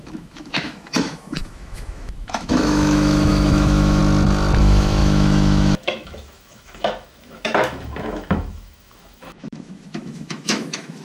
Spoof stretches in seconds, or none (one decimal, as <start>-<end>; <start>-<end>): 0.0-4.0; 4.6-11.0